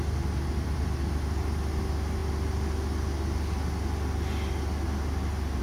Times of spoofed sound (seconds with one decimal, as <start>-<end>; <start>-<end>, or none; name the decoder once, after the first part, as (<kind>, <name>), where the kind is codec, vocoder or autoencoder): none